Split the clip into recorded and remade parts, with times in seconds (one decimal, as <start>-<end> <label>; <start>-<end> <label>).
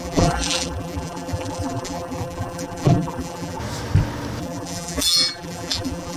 0.0-3.6 remade; 3.6-4.4 recorded; 4.4-6.2 remade